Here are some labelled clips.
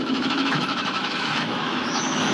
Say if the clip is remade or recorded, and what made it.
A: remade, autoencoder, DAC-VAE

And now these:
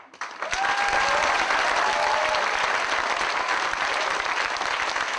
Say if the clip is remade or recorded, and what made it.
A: recorded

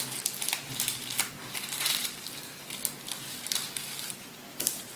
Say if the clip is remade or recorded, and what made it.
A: recorded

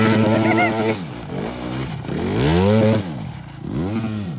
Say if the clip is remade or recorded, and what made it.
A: recorded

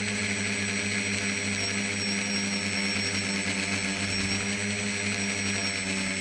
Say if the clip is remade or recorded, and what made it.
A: recorded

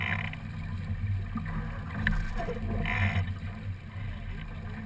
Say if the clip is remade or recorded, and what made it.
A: recorded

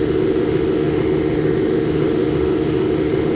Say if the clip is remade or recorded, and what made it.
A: remade, autoencoder, DAC-VAE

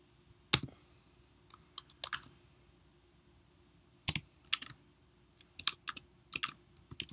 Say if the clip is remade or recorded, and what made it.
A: recorded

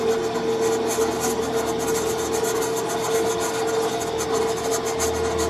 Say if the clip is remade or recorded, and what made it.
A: recorded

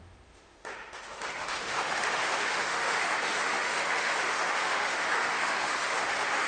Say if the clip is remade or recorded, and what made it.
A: remade, autoencoder, DAC-VAE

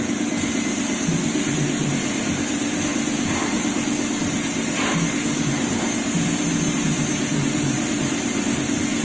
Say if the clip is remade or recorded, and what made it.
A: recorded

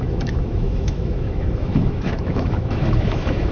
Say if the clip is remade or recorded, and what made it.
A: remade, autoencoder, DAC-VAE